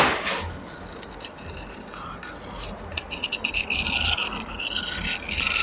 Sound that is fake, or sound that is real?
real